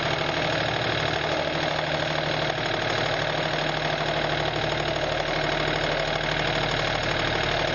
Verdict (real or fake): real